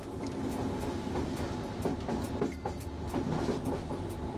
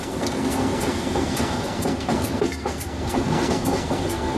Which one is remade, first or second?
second